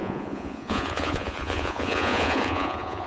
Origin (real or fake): fake